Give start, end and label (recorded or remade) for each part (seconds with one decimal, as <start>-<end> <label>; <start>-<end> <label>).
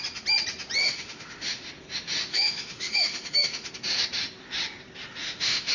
0.0-0.8 recorded; 0.8-1.7 remade; 1.7-2.3 recorded; 2.3-3.7 remade; 3.7-5.2 recorded; 5.2-5.7 remade